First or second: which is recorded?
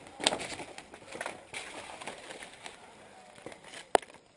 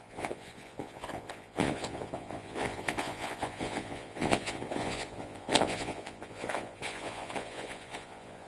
first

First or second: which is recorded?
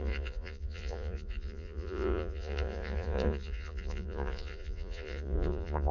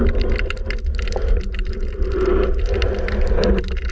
second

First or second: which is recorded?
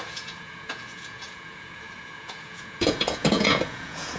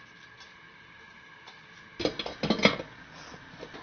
second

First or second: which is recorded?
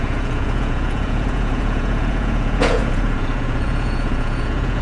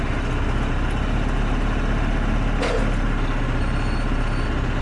second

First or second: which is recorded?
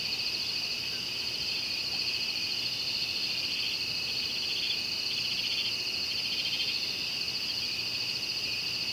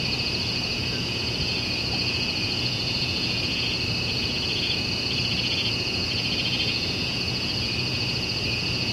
first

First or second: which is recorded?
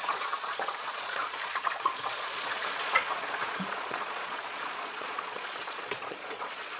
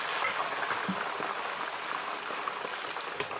second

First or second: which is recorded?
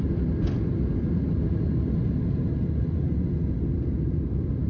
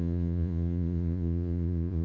first